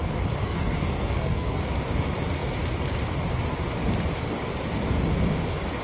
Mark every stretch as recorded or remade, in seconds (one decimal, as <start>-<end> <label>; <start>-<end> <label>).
0.0-0.4 recorded; 0.4-1.6 remade; 1.6-5.8 recorded